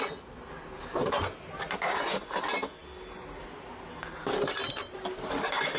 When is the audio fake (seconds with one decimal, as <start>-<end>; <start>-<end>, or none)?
none